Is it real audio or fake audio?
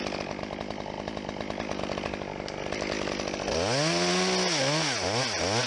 real